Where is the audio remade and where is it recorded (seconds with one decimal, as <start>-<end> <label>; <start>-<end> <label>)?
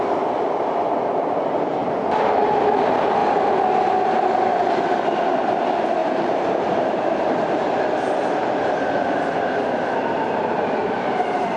0.0-6.0 recorded; 6.0-7.1 remade; 7.1-10.8 recorded; 10.8-11.6 remade